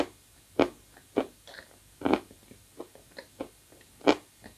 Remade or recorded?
recorded